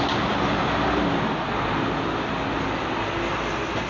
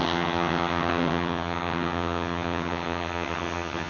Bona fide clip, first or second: first